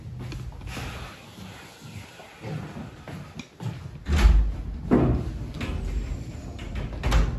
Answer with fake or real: real